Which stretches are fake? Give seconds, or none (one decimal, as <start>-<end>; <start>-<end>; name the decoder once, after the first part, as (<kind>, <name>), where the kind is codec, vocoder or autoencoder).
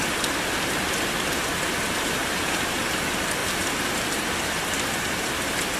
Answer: 2.2-2.8 (vocoder, BigVGAN v2); 3.4-4.1